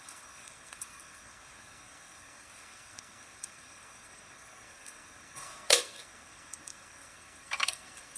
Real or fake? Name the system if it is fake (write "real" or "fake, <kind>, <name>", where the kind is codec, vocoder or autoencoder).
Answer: fake, codec, SNAC